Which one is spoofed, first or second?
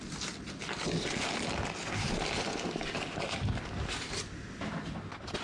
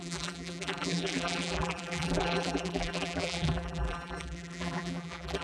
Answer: second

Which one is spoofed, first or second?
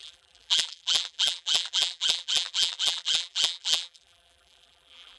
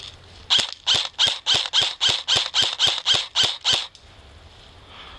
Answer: first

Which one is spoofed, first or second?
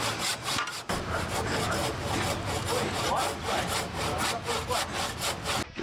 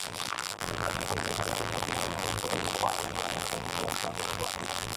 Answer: second